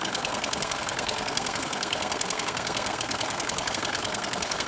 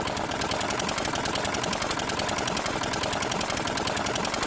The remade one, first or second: first